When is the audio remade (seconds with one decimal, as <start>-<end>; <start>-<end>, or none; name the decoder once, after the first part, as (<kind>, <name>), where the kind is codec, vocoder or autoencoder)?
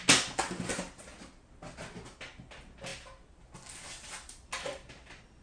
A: none